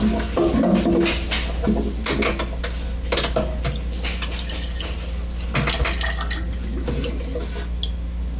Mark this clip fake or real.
real